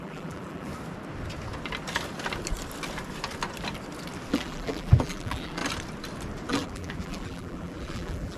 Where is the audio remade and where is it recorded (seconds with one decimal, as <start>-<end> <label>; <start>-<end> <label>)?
0.0-0.7 remade; 0.7-4.3 recorded; 4.3-5.6 remade; 5.6-6.5 recorded; 6.5-8.4 remade